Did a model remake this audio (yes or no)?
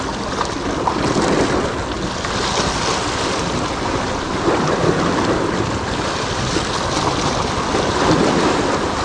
no